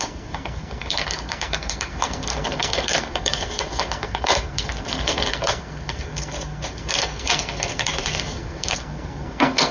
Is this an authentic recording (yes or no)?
no